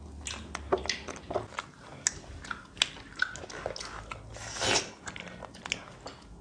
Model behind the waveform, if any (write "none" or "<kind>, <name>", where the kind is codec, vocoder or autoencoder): none